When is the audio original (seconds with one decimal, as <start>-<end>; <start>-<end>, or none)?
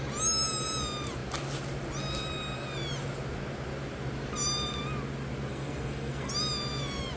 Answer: 0.0-5.5; 6.3-7.2